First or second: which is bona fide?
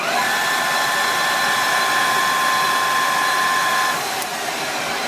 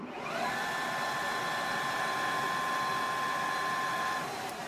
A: second